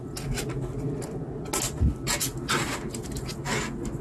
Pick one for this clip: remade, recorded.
recorded